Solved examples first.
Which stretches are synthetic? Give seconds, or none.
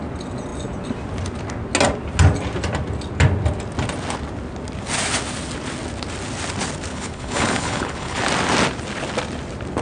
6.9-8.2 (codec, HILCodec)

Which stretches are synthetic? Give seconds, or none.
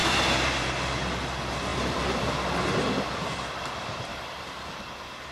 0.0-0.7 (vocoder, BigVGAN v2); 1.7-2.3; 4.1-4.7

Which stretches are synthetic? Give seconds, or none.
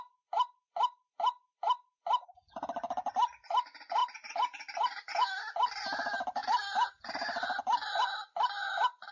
none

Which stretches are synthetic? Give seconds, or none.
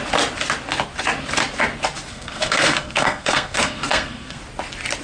2.1-4.4 (codec, SNAC)